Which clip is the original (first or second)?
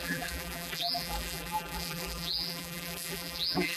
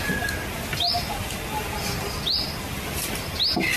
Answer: second